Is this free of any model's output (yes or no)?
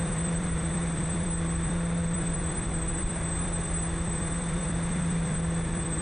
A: no